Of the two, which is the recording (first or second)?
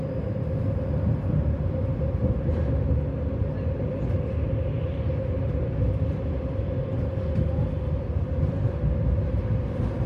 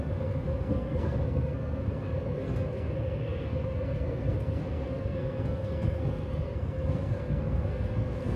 first